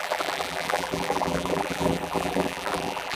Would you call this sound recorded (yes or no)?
no